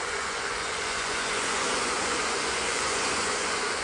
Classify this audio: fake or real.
fake